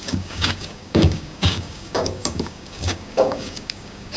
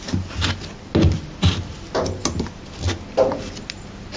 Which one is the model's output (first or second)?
first